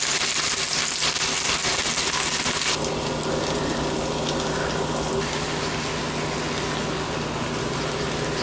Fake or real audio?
real